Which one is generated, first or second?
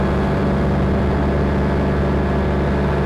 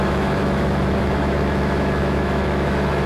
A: second